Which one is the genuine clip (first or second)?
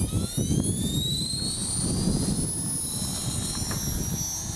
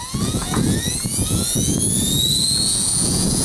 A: first